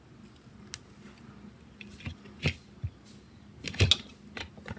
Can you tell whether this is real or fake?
real